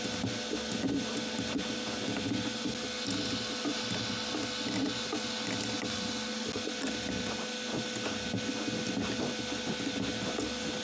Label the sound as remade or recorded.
recorded